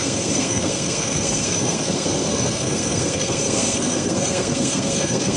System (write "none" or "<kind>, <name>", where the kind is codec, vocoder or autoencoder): codec, SNAC